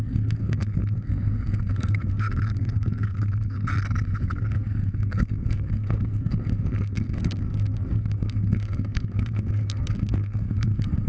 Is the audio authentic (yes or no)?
no